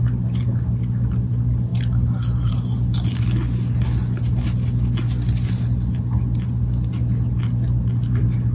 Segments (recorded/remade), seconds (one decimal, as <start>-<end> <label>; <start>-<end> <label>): 0.0-8.5 recorded

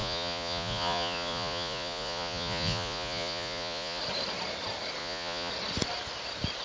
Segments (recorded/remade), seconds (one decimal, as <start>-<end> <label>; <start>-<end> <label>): 0.0-4.0 remade; 4.0-5.0 recorded; 5.0-5.5 remade; 5.5-6.6 recorded

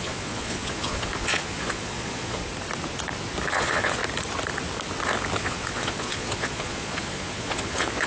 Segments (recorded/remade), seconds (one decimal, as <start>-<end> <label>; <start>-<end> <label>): 0.0-2.4 remade; 2.4-3.5 recorded; 3.5-4.0 remade; 4.0-5.4 recorded; 5.4-8.1 remade

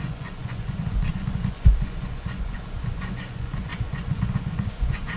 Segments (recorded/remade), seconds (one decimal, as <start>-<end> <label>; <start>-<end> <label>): 0.0-5.2 remade

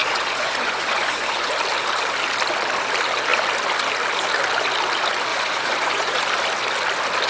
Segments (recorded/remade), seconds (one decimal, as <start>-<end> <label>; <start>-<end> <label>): 0.0-1.5 remade; 1.5-5.3 recorded; 5.3-6.2 remade; 6.2-7.3 recorded

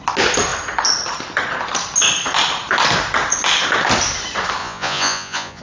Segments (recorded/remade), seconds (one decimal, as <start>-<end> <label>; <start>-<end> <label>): 0.0-4.6 recorded; 4.6-5.6 remade

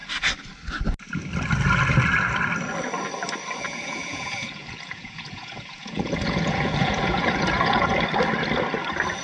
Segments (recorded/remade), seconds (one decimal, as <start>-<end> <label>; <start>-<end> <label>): 0.0-3.6 recorded; 3.6-7.9 remade; 7.9-9.2 recorded

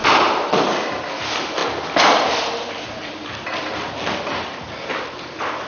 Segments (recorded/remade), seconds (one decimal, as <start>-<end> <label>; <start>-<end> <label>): 0.0-5.7 recorded